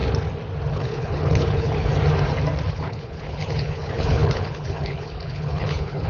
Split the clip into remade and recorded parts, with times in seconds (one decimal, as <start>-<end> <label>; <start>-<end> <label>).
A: 0.0-0.7 recorded; 0.7-1.9 remade; 1.9-2.7 recorded; 2.7-6.1 remade